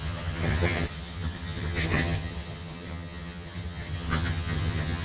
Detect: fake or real fake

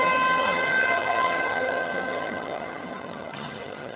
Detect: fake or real fake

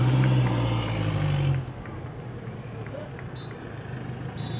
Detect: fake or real real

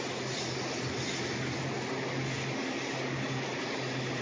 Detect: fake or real real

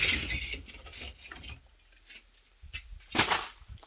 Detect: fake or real real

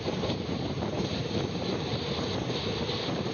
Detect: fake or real real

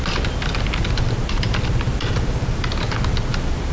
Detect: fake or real real